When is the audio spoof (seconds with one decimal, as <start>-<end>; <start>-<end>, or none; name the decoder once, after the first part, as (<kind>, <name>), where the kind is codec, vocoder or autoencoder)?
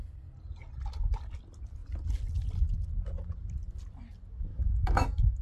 4.5-5.4 (autoencoder, DAC-VAE)